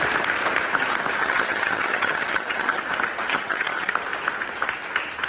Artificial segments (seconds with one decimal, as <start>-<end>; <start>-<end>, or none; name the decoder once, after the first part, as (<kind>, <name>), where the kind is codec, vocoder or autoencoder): 1.2-2.8 (vocoder, HiFi-GAN); 3.3-3.9